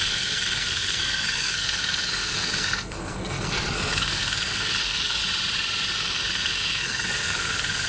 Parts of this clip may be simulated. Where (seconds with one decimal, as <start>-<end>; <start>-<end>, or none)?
0.0-5.2; 5.9-7.9